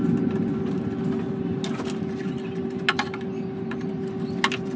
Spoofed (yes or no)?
no